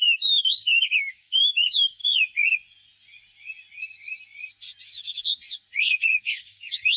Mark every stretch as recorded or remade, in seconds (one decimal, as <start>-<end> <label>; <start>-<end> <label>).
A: 0.0-2.0 remade; 2.0-6.2 recorded; 6.2-7.0 remade